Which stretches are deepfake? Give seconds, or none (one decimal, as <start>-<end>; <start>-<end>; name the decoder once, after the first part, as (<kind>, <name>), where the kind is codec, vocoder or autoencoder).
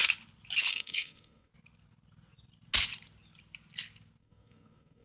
0.7-1.5 (codec, SNAC); 4.2-5.0